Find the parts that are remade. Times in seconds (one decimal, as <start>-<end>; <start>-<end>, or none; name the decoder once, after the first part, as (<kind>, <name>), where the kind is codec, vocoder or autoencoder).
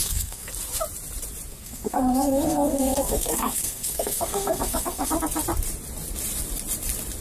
0.0-0.5 (codec, SNAC); 1.5-5.1